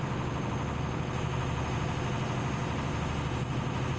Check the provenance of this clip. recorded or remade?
recorded